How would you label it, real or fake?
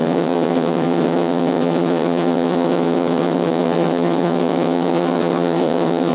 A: fake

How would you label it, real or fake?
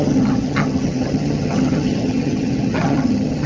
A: fake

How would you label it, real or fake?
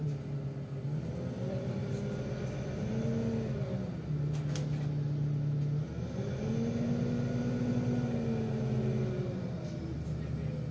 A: real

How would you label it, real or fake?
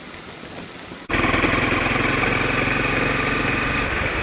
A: real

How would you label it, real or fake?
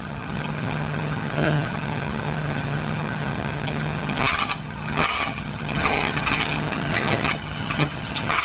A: fake